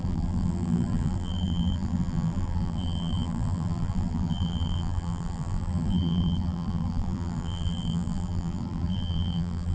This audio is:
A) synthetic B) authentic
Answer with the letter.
A